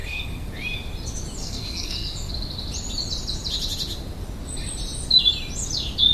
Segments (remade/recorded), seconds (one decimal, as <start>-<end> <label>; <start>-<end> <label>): 0.0-0.5 remade; 0.5-1.4 recorded; 1.4-2.3 remade; 2.3-6.1 recorded